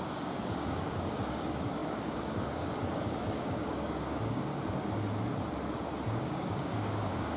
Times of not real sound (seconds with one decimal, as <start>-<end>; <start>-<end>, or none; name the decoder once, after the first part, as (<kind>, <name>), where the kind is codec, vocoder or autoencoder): 0.0-4.5 (codec, DAC); 6.1-7.4